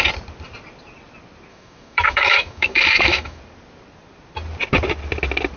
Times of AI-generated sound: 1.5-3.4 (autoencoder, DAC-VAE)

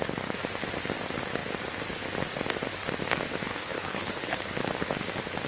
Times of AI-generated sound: 3.5-4.5 (codec, HILCodec)

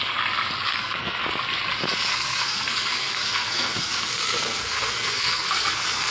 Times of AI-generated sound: 0.7-1.2 (codec, SNAC); 2.1-6.1